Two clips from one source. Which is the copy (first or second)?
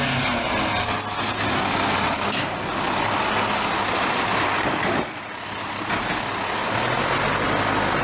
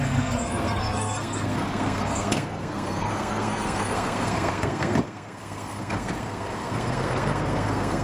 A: second